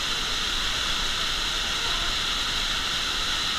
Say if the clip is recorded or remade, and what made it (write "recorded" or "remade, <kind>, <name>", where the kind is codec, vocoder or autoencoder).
recorded